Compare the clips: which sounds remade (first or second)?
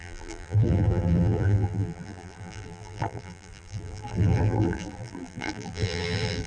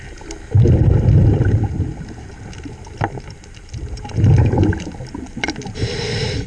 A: first